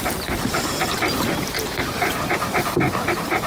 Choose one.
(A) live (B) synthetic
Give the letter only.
A